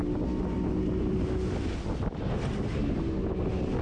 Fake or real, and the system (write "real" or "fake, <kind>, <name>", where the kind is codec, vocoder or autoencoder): real